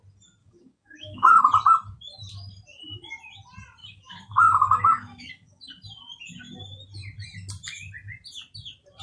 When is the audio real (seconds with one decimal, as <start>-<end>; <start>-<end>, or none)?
0.0-0.4; 1.4-3.8; 5.6-9.0